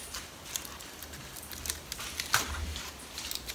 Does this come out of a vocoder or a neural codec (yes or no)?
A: no